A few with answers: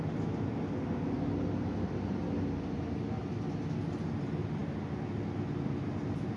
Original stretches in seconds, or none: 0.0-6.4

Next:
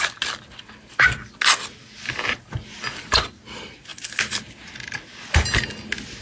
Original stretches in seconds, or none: 0.0-6.2

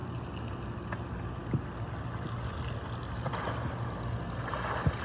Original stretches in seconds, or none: 0.0-5.0

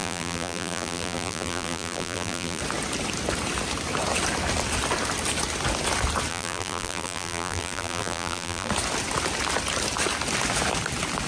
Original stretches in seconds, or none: 2.6-6.3; 8.7-11.3